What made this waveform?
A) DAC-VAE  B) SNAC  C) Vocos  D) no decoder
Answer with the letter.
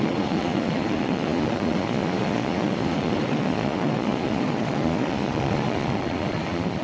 C